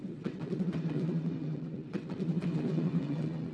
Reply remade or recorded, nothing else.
remade